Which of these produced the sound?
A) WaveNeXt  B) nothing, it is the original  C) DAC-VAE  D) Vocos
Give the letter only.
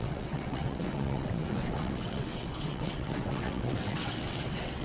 A